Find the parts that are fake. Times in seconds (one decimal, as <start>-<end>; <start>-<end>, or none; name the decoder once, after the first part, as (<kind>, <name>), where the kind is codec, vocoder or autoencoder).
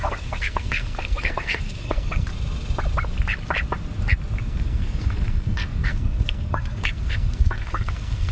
0.0-2.3 (codec, SNAC); 4.4-8.3